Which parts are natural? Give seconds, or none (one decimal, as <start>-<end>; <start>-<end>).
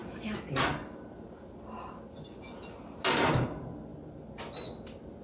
0.0-5.2